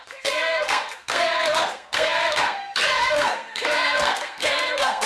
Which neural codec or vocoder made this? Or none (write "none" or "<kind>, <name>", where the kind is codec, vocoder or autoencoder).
codec, SNAC